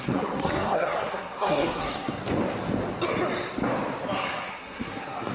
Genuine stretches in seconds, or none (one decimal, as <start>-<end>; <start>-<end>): 2.2-4.5